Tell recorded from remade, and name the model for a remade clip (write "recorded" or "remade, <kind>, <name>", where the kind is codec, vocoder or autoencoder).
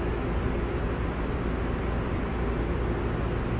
recorded